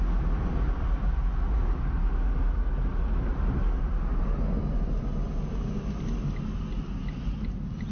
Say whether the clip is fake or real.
real